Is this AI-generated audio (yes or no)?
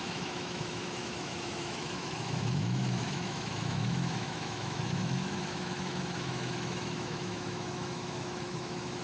yes